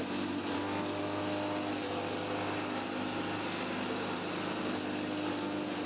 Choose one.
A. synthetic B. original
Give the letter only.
B